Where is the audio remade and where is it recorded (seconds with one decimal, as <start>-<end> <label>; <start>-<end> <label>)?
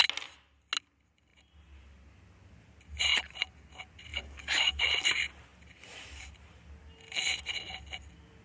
0.0-4.1 recorded; 4.1-4.8 remade; 4.8-8.4 recorded